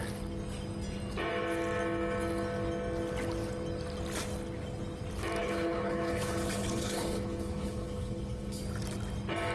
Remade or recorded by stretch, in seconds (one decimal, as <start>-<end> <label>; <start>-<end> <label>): 0.0-5.4 recorded; 5.4-8.6 remade; 8.6-9.5 recorded